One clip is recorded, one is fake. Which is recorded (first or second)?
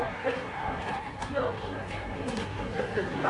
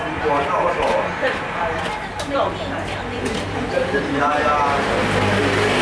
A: second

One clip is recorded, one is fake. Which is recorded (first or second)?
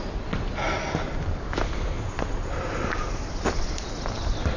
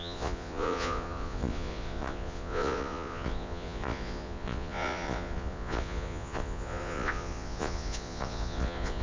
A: first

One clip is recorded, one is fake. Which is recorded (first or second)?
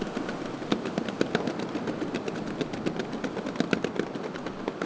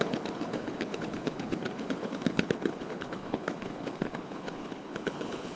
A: first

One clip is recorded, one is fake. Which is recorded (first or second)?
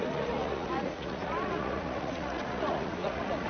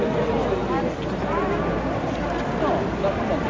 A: second